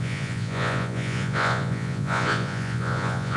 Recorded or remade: remade